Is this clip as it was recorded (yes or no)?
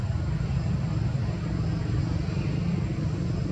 yes